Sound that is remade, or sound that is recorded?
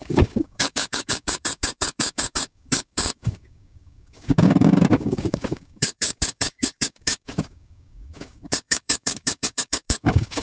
remade